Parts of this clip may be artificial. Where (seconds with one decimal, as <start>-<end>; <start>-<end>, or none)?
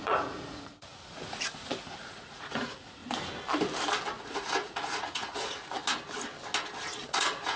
0.0-3.0; 4.2-5.8; 7.0-7.6